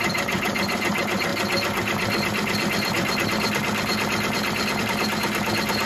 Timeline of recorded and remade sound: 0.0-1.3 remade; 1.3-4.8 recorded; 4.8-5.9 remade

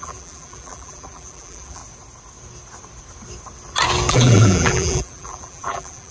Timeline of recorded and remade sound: 0.0-1.8 remade; 1.8-4.1 recorded; 4.1-6.1 remade

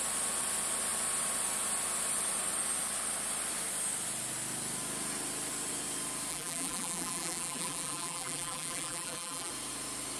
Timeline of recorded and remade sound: 0.0-6.3 recorded; 6.3-9.5 remade; 9.5-10.2 recorded